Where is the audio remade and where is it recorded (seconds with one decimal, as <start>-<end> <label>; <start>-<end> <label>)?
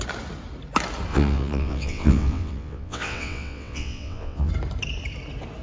0.0-1.1 recorded; 1.1-4.5 remade; 4.5-5.6 recorded